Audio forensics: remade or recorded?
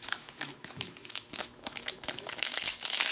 remade